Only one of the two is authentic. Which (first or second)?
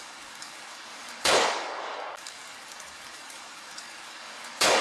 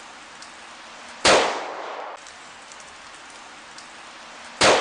second